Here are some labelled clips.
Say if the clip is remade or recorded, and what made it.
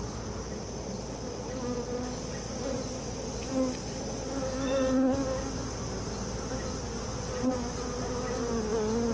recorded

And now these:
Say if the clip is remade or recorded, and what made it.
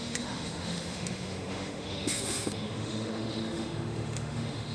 remade, autoencoder, DAC-VAE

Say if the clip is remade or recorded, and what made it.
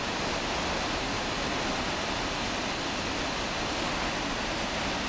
recorded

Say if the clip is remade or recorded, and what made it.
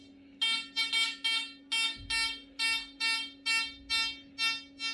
recorded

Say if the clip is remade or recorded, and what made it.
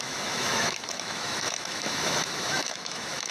remade, autoencoder, DAC-VAE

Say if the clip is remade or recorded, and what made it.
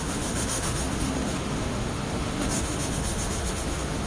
remade, autoencoder, DAC-VAE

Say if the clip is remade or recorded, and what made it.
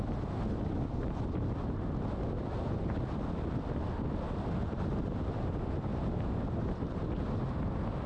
recorded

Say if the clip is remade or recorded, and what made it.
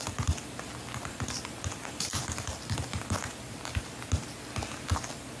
recorded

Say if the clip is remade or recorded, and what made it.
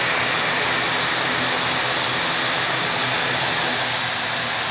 recorded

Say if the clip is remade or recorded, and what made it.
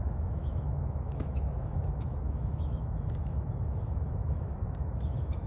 remade, autoencoder, DAC-VAE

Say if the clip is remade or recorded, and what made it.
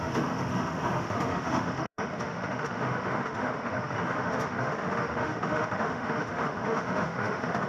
remade, autoencoder, DAC-VAE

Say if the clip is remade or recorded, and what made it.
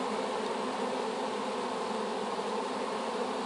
recorded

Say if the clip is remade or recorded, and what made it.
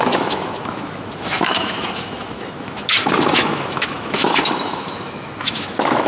remade, autoencoder, DAC-VAE